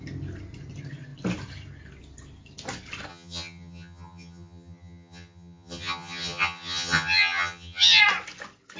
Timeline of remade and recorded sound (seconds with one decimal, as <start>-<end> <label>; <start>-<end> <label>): 0.0-3.1 recorded; 3.1-8.0 remade; 8.0-8.8 recorded